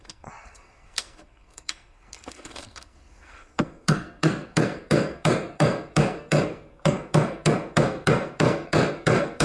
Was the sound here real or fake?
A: fake